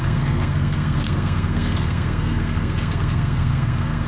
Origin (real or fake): fake